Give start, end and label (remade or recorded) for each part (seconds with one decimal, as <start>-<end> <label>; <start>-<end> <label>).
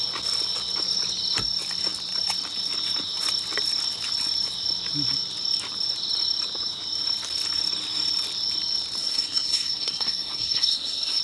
0.0-9.0 recorded; 9.0-11.2 remade